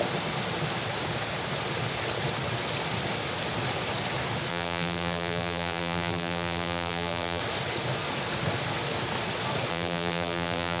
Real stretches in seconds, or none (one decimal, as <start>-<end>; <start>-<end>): 0.0-4.5; 7.4-9.7